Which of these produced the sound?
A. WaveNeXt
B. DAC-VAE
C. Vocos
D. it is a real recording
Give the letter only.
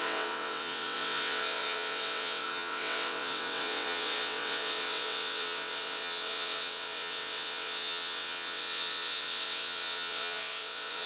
A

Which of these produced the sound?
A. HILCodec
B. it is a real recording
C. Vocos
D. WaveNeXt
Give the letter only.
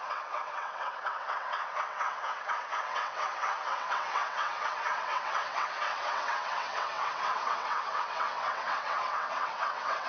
D